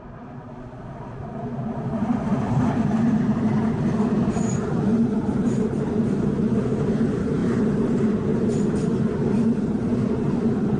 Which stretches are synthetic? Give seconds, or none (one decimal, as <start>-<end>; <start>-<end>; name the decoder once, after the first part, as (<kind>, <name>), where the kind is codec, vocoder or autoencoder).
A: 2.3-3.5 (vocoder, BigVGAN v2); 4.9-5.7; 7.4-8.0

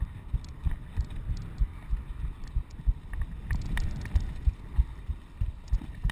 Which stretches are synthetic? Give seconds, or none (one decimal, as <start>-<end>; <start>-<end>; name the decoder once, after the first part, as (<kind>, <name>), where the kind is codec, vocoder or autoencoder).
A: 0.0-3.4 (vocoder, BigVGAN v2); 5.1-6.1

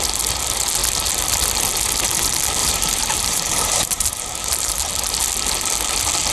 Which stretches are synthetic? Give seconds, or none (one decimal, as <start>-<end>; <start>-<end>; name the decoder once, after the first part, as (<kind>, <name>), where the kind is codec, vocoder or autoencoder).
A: 2.6-4.9 (vocoder, BigVGAN v2)

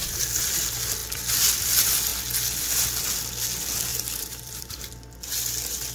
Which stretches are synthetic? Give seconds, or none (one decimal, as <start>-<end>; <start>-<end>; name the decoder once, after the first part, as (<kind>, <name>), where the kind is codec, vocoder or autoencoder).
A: 3.9-4.8 (vocoder, BigVGAN v2)

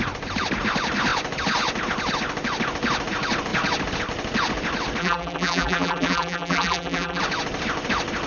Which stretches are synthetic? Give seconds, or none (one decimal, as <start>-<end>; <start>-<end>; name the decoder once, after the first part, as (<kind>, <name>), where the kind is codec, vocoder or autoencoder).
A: 5.0-7.2 (vocoder, BigVGAN v2)